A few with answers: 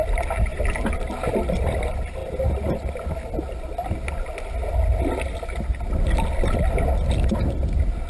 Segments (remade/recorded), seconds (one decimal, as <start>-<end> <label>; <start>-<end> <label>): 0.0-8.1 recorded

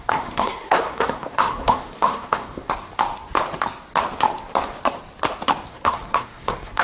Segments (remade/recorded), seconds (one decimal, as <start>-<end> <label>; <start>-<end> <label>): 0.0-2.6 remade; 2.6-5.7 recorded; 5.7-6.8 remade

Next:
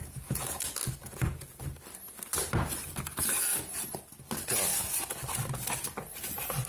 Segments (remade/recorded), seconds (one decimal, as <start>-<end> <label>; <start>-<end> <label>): 0.0-0.6 remade; 0.6-1.0 recorded; 1.0-1.6 remade; 1.6-6.7 recorded

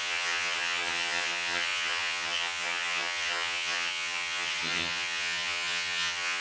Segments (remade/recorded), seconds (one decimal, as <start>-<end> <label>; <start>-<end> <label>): 0.0-6.4 remade

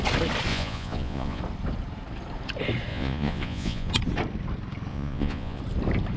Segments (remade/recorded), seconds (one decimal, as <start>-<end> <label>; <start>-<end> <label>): 0.0-0.5 recorded; 0.5-1.4 remade; 1.4-2.9 recorded; 2.9-3.9 remade; 3.9-4.9 recorded; 4.9-5.6 remade; 5.6-6.2 recorded

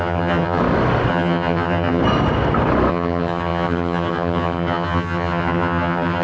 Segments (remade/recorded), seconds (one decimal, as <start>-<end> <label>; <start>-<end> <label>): 0.0-0.6 remade; 0.6-1.1 recorded; 1.1-2.0 remade; 2.0-2.9 recorded; 2.9-6.2 remade